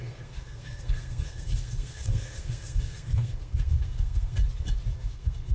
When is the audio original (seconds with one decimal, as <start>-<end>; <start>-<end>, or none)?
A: 4.4-4.9